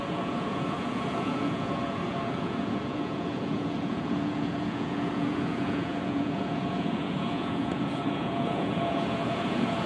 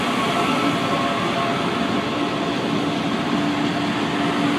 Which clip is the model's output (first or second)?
first